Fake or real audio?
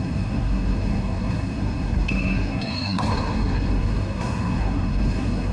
fake